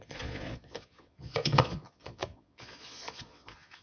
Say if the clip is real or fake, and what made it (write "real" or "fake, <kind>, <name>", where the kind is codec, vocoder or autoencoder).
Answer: fake, vocoder, Vocos